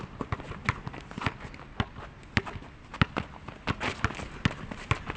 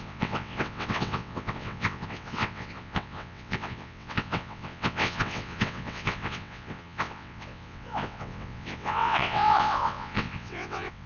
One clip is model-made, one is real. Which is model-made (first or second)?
second